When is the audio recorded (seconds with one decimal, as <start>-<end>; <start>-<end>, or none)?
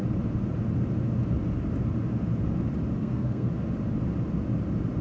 0.0-3.0; 3.5-5.0